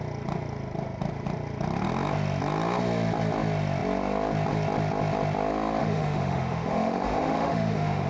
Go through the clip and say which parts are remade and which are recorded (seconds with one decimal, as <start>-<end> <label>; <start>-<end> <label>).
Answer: 0.0-5.8 recorded; 5.8-8.1 remade

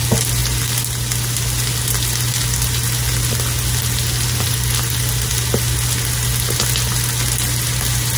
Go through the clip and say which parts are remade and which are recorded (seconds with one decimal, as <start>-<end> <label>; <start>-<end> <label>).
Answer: 0.0-8.2 recorded